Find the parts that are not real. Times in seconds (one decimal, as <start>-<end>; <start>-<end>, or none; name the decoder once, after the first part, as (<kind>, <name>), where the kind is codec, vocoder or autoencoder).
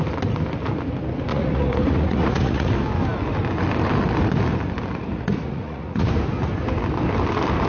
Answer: 1.3-2.7 (vocoder, Vocos); 5.1-6.1